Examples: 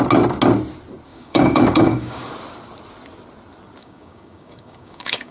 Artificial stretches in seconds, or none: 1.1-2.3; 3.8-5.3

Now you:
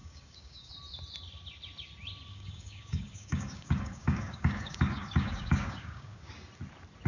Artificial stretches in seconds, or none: 0.0-0.7; 2.3-6.3

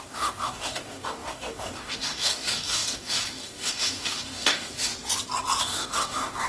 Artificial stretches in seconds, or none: 0.0-4.9; 5.6-6.5

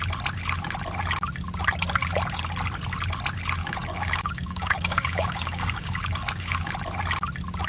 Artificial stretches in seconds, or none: 3.6-6.7

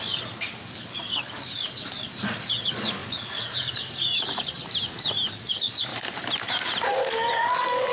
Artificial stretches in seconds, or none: 0.0-4.6; 5.5-5.9; 7.5-7.9

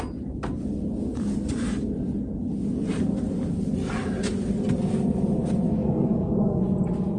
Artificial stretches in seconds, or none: 5.8-6.6

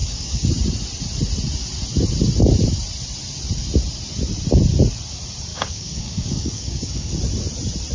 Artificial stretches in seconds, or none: 0.0-0.5; 5.5-7.1

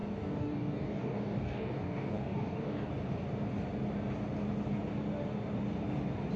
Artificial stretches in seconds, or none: 0.0-2.9